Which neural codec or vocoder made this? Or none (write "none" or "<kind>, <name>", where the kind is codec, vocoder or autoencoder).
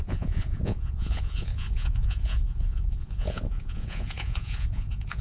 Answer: vocoder, Vocos